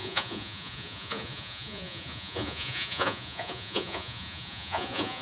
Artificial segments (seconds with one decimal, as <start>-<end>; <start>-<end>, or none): 0.0-5.2